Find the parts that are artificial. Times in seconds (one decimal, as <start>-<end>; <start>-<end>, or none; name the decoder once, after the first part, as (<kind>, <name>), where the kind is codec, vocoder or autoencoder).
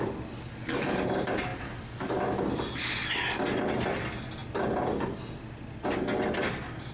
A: none